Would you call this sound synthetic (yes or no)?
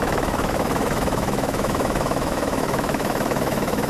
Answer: yes